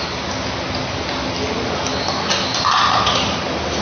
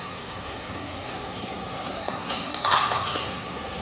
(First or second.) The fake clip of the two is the second